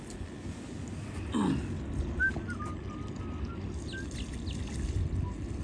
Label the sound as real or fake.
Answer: real